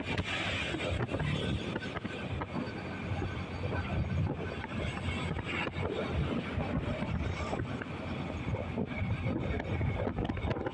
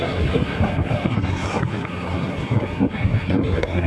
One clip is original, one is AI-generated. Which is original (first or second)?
first